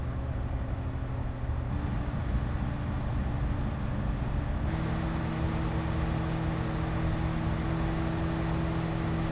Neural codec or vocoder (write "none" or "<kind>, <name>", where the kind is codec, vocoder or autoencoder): none